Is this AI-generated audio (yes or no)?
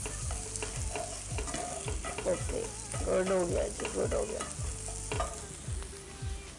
no